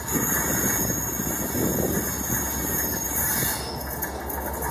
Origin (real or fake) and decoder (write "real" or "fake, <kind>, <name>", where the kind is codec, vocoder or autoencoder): real